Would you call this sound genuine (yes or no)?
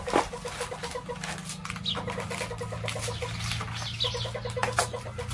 yes